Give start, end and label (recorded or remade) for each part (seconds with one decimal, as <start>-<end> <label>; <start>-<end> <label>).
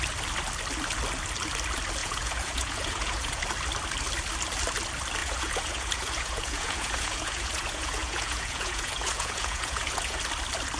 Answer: 0.0-2.0 recorded; 2.0-3.4 remade; 3.4-5.2 recorded; 5.2-10.2 remade; 10.2-10.8 recorded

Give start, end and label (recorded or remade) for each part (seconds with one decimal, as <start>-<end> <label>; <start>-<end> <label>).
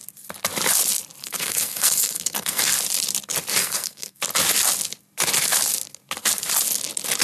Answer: 0.0-1.2 recorded; 1.2-2.7 remade; 2.7-3.6 recorded; 3.6-4.2 remade; 4.2-7.2 recorded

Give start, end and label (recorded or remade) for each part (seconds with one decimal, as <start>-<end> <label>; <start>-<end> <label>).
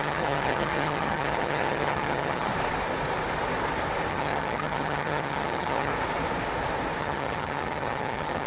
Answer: 0.0-2.5 remade; 2.5-4.1 recorded; 4.1-5.9 remade; 5.9-7.0 recorded; 7.0-8.5 remade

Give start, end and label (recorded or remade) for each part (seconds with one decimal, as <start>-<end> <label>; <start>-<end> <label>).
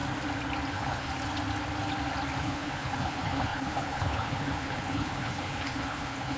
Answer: 0.0-0.7 recorded; 0.7-1.1 remade; 1.1-2.4 recorded; 2.4-6.4 remade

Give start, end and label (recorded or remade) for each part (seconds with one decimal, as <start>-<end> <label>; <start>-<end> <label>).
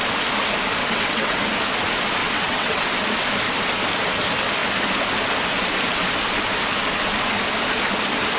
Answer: 0.0-0.8 recorded; 0.8-1.4 remade; 1.4-2.2 recorded; 2.2-2.8 remade; 2.8-8.4 recorded